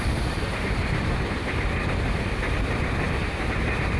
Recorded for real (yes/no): no